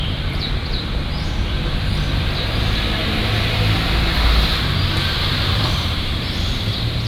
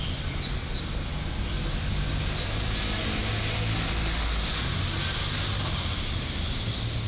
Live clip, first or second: second